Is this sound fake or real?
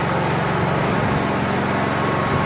real